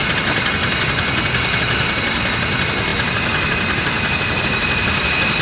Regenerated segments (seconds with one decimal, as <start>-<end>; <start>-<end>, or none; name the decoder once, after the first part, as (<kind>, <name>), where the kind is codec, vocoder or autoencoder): none